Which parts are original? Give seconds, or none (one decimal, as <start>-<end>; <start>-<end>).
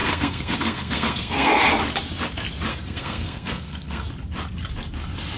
1.5-2.7; 4.1-5.4